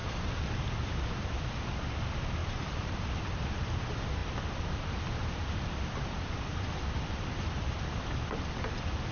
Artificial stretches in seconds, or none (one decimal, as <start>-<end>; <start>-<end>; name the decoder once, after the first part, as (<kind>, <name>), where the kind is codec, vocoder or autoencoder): 0.6-9.1 (vocoder, BigVGAN v2)